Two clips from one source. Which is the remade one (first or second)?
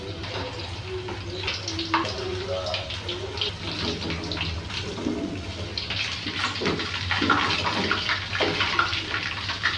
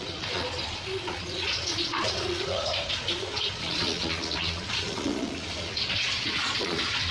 second